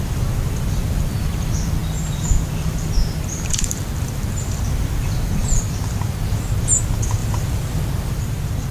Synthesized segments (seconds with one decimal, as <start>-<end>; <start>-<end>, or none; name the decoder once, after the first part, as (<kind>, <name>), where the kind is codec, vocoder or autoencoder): 1.8-4.6 (vocoder, BigVGAN v2); 5.4-6.2; 7.2-8.7